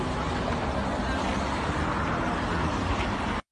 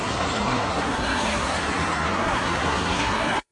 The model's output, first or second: second